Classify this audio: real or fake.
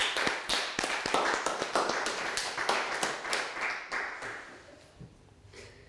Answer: real